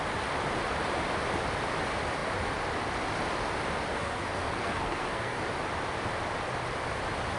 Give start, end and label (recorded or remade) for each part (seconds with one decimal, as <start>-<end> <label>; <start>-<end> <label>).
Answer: 0.0-3.9 recorded; 3.9-5.4 remade; 5.4-7.4 recorded